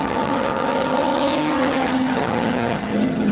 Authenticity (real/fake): fake